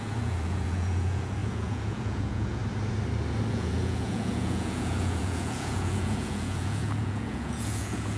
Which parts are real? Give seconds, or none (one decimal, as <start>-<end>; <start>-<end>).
2.6-3.5